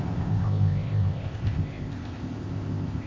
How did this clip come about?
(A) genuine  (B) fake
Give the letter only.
B